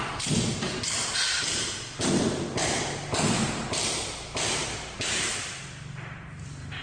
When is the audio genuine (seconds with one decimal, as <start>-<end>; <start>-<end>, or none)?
0.0-4.6